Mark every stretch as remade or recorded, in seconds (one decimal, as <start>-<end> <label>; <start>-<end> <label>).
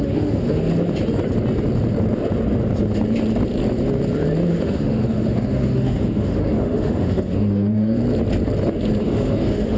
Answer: 0.0-0.6 remade; 0.6-4.5 recorded; 4.5-8.0 remade; 8.0-9.0 recorded; 9.0-9.8 remade